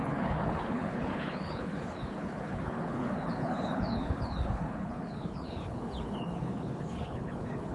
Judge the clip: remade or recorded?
remade